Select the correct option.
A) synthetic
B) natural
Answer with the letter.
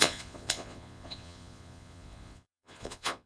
A